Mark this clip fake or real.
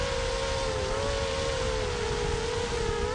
real